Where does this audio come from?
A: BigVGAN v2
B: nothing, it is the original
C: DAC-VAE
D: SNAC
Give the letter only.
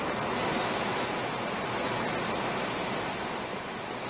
B